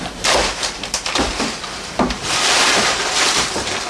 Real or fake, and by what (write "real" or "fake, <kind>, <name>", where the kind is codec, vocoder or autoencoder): fake, vocoder, BigVGAN v2